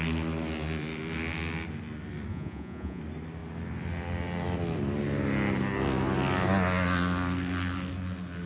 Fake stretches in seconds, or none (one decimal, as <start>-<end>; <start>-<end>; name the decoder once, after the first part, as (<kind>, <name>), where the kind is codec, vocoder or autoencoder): 2.3-3.0 (vocoder, Vocos)